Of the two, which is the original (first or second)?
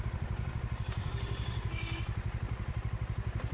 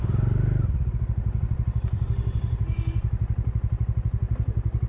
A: second